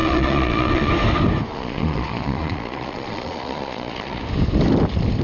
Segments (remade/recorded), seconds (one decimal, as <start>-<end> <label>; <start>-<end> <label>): 0.0-0.9 remade; 0.9-1.5 recorded; 1.5-4.2 remade; 4.2-5.2 recorded